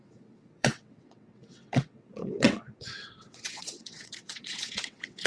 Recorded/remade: remade